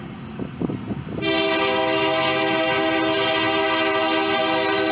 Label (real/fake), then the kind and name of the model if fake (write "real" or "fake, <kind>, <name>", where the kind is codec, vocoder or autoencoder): real